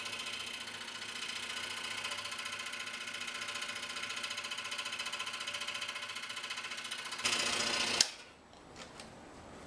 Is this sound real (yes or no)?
yes